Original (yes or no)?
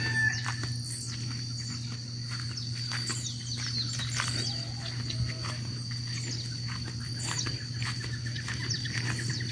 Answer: yes